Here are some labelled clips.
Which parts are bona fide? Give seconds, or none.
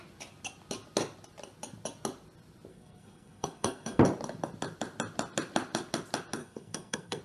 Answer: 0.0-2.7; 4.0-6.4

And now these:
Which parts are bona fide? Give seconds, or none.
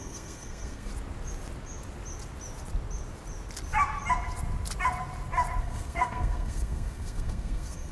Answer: 0.9-5.6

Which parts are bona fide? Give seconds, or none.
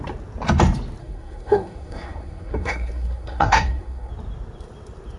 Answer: 0.0-1.0; 4.1-5.2